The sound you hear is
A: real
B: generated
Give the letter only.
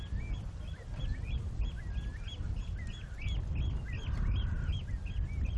A